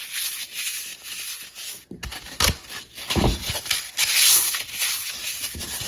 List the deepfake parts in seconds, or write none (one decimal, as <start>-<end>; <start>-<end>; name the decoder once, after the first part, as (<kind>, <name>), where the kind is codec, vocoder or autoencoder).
2.1-4.8 (vocoder, BigVGAN v2)